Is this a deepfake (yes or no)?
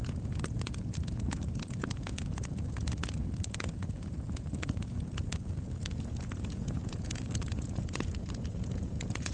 yes